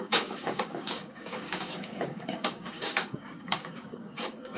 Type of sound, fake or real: fake